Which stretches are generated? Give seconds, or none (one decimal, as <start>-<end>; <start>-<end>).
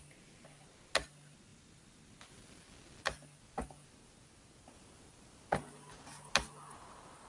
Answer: none